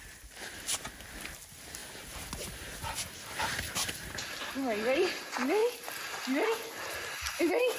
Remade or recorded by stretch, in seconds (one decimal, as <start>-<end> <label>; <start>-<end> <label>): 0.0-7.8 recorded